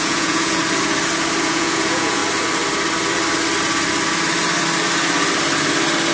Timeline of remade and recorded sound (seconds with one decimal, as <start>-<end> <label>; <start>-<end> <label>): 0.0-0.6 remade; 0.6-1.4 recorded; 1.4-2.2 remade; 2.2-6.1 recorded